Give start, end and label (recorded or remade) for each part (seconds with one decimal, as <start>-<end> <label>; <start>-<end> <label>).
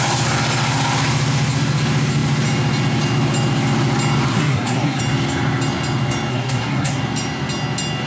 0.0-4.3 recorded; 4.3-5.0 remade; 5.0-6.3 recorded; 6.3-7.0 remade; 7.0-8.1 recorded